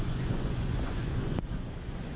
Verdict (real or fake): fake